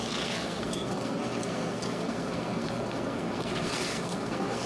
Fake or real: fake